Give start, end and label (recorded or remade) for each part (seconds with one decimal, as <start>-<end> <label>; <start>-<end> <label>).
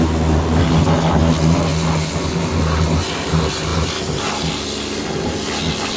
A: 0.0-6.0 recorded